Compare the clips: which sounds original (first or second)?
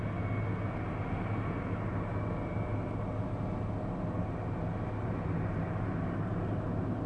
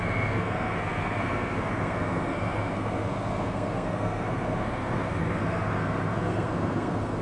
first